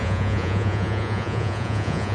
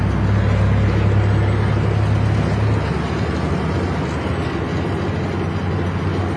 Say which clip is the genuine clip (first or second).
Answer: second